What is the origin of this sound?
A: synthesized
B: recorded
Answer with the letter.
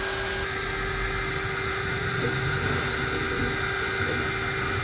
B